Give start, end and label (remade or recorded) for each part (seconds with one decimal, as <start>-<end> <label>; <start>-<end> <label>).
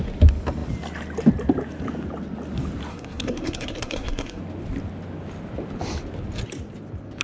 0.0-2.9 recorded; 2.9-4.4 remade; 4.4-7.2 recorded